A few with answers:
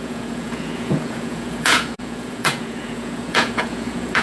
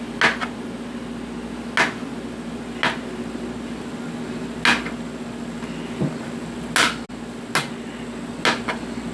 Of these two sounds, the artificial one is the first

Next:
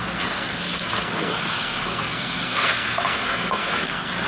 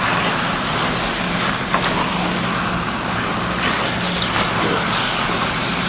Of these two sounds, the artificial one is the first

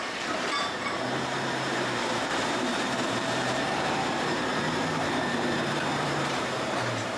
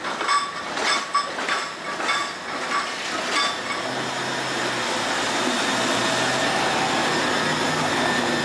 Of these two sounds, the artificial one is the first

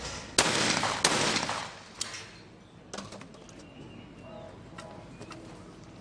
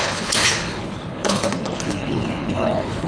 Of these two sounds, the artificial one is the second